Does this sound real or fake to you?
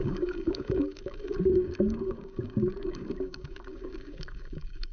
fake